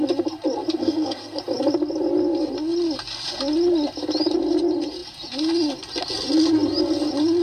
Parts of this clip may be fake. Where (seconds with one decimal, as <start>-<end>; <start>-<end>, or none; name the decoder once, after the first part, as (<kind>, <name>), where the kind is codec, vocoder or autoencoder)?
0.8-1.4 (codec, SNAC)

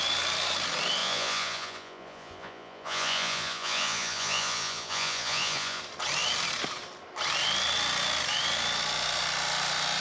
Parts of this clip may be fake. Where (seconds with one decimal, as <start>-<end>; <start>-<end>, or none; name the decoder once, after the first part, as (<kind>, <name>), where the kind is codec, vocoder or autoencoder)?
1.0-5.8 (vocoder, Vocos)

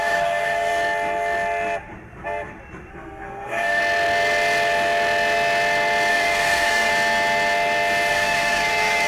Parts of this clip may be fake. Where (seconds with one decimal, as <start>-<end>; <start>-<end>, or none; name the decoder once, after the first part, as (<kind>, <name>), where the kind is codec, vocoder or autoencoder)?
0.0-0.7 (codec, SNAC); 2.9-3.8; 6.1-6.9; 8.1-9.1

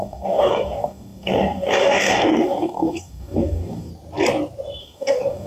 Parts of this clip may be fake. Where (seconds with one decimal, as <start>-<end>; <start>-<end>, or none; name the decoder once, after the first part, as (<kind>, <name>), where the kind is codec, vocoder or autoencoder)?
0.0-3.9 (codec, DAC); 4.8-5.5

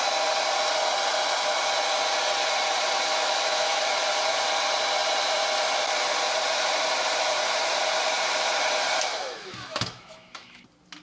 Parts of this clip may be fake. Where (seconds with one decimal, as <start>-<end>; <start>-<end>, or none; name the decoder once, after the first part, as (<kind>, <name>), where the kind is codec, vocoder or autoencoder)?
3.1-3.8 (autoencoder, DAC-VAE); 9.1-10.6

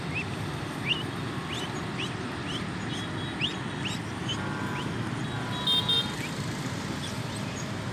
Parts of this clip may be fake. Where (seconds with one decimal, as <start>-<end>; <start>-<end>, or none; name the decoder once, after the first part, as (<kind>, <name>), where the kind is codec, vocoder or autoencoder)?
none